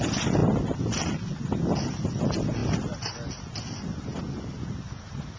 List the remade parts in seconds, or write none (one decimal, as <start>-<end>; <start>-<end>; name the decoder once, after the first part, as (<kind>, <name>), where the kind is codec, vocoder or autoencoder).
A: none